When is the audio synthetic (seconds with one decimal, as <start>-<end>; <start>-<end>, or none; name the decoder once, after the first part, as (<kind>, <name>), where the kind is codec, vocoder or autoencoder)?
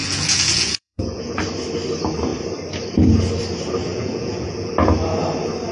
0.0-1.4 (vocoder, Vocos); 3.9-4.7